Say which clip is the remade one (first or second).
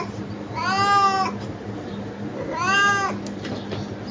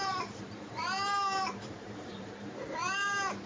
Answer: second